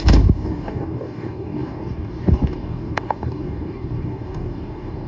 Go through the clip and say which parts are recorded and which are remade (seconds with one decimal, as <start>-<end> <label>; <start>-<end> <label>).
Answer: 0.0-5.1 remade